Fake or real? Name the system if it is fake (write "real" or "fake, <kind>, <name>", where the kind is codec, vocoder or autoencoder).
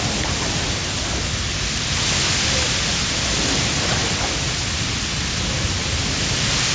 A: real